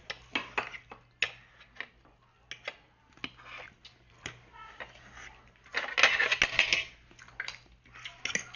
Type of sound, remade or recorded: recorded